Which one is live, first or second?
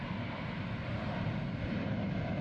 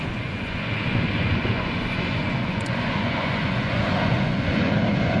first